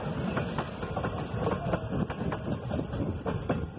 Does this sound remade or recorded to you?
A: recorded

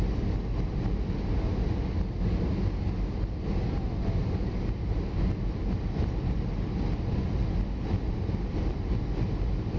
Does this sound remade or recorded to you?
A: recorded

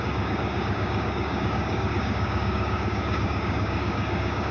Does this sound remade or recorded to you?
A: remade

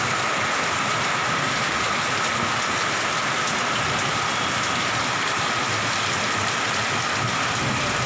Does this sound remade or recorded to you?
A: recorded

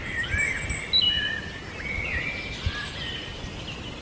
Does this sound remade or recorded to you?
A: recorded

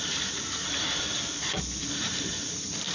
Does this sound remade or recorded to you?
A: recorded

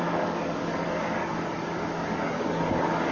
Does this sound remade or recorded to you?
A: remade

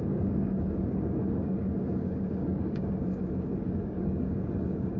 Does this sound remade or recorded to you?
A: remade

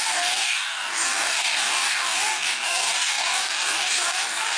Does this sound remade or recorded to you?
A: remade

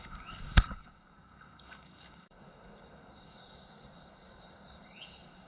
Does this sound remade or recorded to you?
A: remade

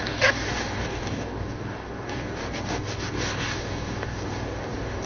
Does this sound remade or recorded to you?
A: remade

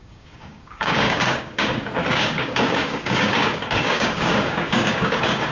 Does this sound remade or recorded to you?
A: remade